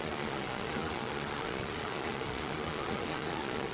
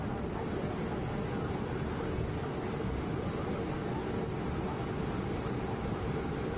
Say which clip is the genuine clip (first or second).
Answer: second